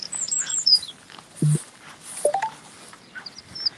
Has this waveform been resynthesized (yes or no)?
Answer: no